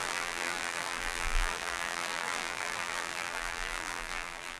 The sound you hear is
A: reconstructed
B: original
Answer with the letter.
A